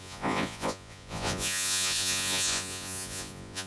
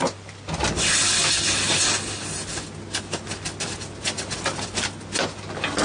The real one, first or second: second